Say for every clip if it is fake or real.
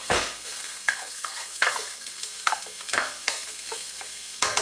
fake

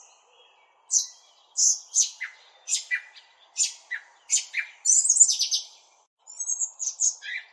real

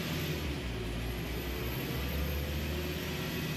real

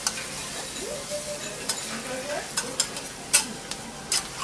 real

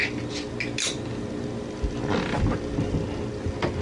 real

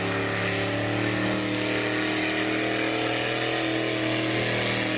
real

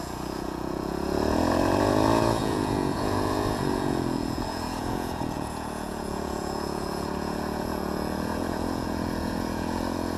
fake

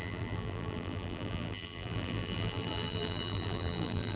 fake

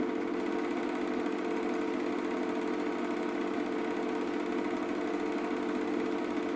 real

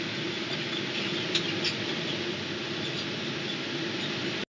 real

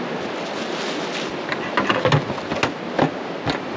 real